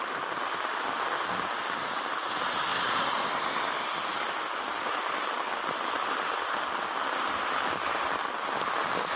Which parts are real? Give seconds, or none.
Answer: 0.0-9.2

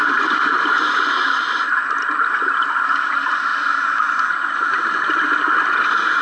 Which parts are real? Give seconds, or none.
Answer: 0.0-6.2

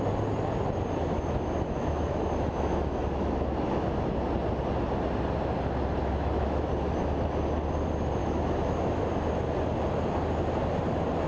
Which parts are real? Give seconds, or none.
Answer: 0.0-1.0; 4.2-6.0; 6.7-8.2; 9.0-11.3

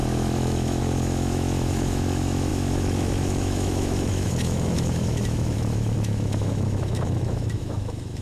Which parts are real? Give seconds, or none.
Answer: none

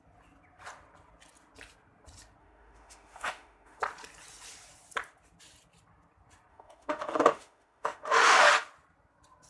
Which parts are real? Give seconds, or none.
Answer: 0.0-2.4; 3.8-6.5; 8.5-9.5